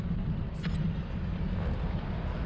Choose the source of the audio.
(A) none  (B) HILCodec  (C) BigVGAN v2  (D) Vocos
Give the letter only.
A